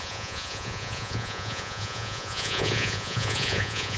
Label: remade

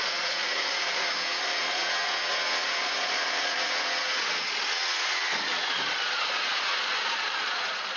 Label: remade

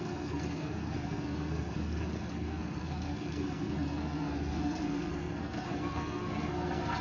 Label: remade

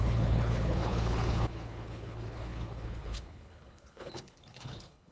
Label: remade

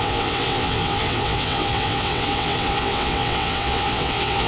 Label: remade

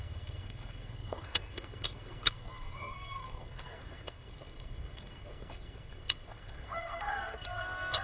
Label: remade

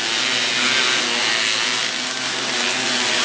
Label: recorded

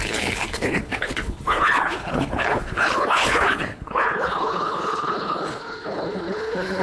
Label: remade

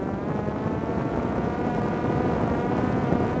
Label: recorded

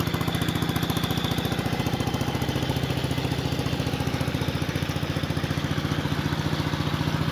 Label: recorded